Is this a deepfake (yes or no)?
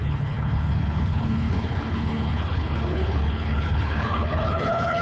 yes